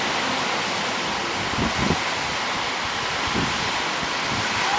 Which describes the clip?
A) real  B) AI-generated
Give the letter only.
A